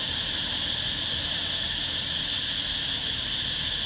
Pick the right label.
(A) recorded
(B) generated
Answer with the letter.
A